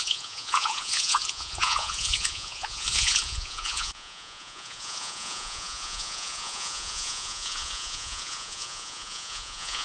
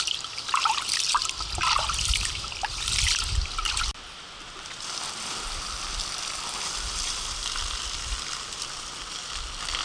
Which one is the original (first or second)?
second